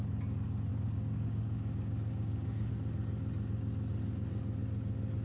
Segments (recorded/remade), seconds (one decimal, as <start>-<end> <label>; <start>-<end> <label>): 0.0-0.7 recorded; 0.7-2.7 remade; 2.7-5.2 recorded